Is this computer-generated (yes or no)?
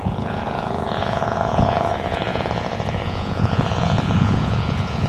yes